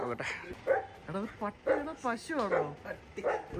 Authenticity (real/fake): real